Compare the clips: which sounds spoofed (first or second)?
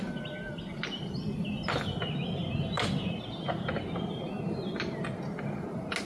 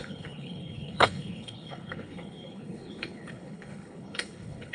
second